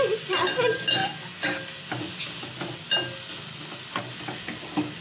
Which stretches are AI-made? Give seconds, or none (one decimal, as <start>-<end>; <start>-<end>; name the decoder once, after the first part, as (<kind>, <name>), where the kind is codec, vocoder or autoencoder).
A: none